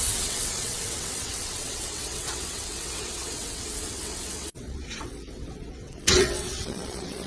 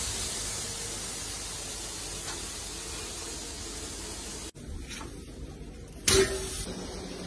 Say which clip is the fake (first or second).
first